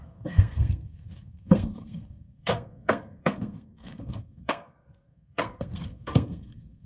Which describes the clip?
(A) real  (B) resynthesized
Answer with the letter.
B